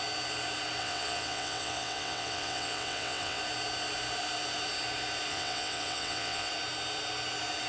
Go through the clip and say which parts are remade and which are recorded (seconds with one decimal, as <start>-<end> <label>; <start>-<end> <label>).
0.0-0.8 recorded; 0.8-3.4 remade; 3.4-5.3 recorded; 5.3-6.5 remade; 6.5-7.7 recorded